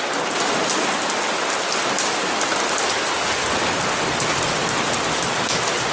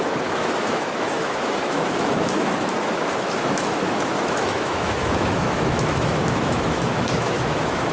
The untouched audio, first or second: first